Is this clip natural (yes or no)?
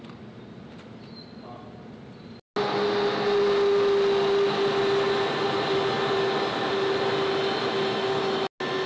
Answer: yes